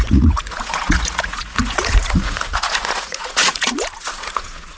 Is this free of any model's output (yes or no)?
no